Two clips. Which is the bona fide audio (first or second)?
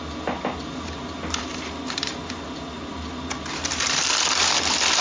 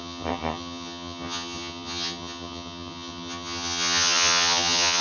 first